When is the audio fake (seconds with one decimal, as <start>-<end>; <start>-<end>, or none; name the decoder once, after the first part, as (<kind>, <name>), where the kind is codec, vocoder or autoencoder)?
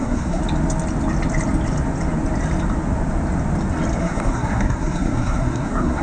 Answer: 0.0-0.4 (codec, SNAC); 4.0-6.0